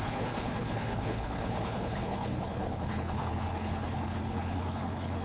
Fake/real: fake